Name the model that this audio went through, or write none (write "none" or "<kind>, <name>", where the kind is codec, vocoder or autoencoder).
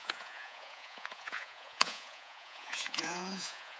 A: vocoder, Vocos